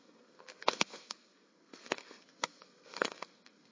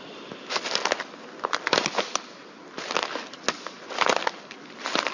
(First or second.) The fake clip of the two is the first